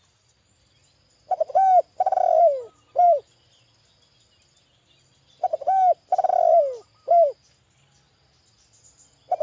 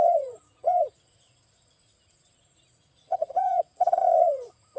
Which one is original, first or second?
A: first